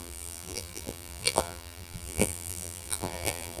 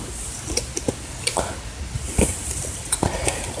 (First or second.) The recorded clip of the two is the second